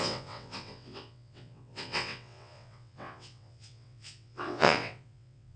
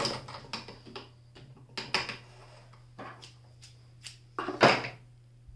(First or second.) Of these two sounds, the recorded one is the second